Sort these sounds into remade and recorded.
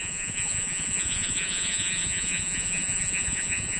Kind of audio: remade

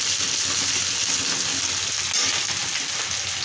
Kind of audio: recorded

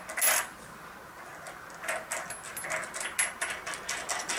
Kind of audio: recorded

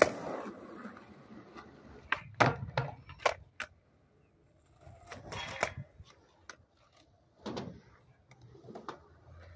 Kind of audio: recorded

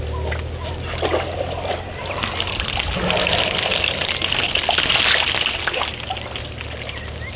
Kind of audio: recorded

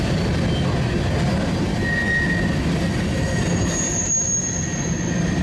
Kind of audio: recorded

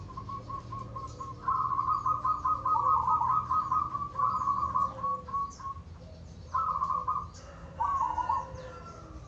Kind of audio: recorded